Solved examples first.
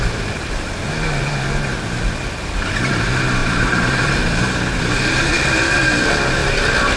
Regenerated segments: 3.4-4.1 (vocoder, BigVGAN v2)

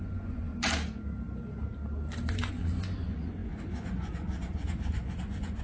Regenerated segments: 0.0-0.5 (vocoder, Vocos); 2.3-5.6

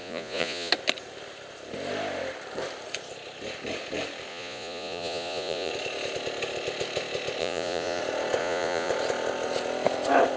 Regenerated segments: 0.0-0.7 (vocoder, Vocos); 4.3-5.7; 7.4-8.0; 8.4-8.9